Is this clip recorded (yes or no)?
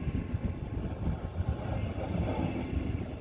yes